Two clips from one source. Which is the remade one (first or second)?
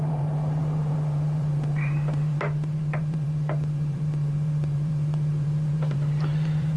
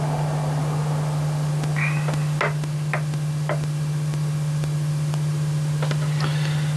first